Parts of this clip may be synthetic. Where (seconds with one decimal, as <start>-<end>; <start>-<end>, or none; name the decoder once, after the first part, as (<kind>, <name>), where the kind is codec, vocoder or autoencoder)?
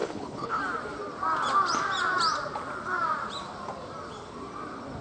0.0-0.6 (codec, HILCodec)